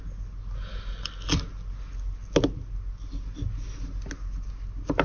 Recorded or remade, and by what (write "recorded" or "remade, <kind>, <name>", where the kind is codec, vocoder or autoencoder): recorded